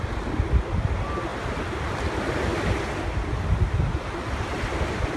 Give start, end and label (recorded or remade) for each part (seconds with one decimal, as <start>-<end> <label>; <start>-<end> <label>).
0.0-5.2 recorded